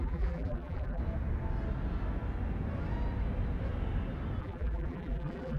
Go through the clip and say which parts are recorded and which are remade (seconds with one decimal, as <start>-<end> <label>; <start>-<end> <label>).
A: 0.0-1.0 remade; 1.0-4.4 recorded; 4.4-5.6 remade